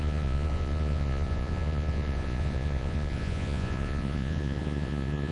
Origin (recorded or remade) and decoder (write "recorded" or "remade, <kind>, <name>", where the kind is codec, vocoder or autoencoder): remade, vocoder, Vocos